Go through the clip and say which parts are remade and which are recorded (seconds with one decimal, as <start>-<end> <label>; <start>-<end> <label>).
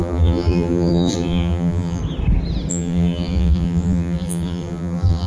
0.0-2.0 remade; 2.0-2.7 recorded; 2.7-5.3 remade